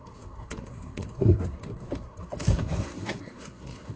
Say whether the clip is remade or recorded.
remade